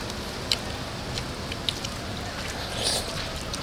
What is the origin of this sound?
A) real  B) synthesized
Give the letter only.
A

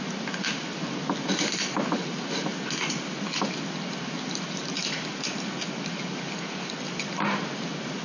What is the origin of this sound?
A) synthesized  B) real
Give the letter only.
B